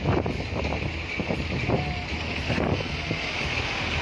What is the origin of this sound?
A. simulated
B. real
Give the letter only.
B